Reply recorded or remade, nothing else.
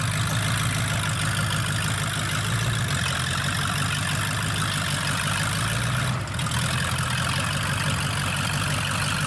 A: recorded